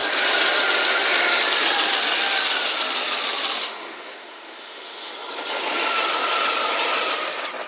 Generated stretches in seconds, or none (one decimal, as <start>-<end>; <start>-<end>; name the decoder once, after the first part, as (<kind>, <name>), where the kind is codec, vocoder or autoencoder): 3.6-5.1 (autoencoder, DAC-VAE)